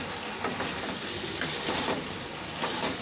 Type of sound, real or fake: real